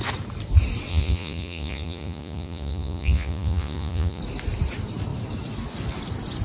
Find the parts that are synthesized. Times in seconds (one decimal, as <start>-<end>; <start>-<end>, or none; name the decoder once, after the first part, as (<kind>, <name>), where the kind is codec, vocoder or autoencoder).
0.9-4.2 (vocoder, Vocos)